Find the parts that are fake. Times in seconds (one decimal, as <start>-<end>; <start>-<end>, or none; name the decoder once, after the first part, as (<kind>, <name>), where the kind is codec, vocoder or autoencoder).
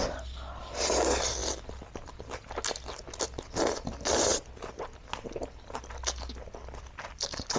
none